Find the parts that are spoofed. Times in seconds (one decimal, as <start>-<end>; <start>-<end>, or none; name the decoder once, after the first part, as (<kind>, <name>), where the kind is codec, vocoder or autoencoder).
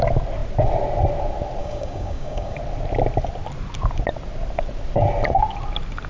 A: 1.6-2.6 (codec, DAC)